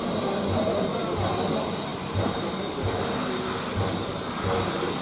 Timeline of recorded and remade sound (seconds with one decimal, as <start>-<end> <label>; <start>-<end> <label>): 0.0-5.0 recorded